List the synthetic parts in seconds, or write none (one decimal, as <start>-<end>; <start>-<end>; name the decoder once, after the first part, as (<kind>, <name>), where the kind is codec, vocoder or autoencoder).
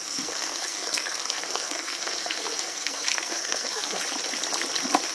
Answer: 0.0-4.0 (codec, SNAC)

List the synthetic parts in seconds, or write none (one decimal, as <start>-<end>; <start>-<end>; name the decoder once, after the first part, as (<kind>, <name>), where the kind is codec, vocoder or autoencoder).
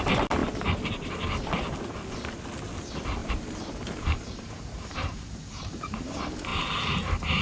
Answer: 0.4-1.1 (vocoder, BigVGAN v2); 3.2-6.1